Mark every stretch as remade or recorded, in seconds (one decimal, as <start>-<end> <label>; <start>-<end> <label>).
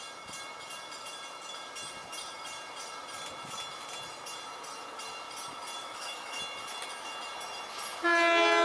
0.0-5.8 recorded; 5.8-6.4 remade; 6.4-8.6 recorded